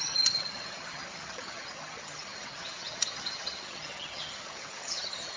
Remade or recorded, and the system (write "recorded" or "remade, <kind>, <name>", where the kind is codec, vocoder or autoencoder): remade, vocoder, HiFi-GAN